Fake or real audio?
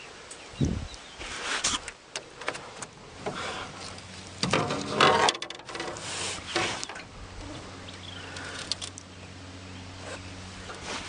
real